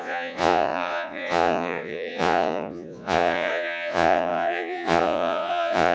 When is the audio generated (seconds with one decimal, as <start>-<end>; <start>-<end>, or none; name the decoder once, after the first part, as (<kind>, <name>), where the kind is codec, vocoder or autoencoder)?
0.0-5.9 (vocoder, Vocos)

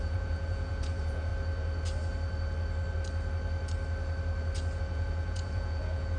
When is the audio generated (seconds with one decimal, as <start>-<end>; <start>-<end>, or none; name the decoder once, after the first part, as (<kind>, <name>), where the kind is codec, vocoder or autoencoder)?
0.0-1.3 (vocoder, Vocos); 4.8-6.2

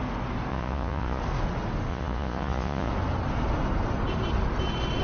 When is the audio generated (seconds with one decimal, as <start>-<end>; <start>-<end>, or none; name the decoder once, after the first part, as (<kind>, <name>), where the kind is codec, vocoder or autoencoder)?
0.5-1.2 (vocoder, Vocos); 1.9-2.9